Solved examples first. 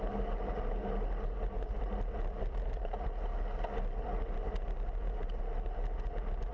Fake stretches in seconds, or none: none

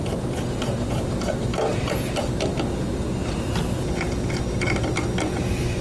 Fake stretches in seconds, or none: none